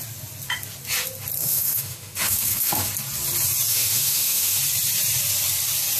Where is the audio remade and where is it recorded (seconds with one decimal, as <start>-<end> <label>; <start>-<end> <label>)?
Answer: 0.0-1.4 recorded; 1.4-2.9 remade; 2.9-3.7 recorded; 3.7-4.6 remade; 4.6-6.0 recorded